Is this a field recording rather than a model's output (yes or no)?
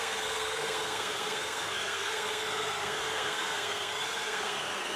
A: no